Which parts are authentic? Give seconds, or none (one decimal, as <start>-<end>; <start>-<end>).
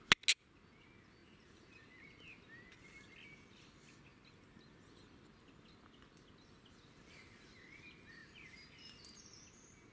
0.0-1.2; 2.0-8.2